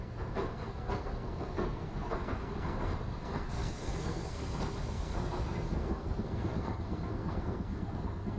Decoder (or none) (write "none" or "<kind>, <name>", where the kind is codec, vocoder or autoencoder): codec, SNAC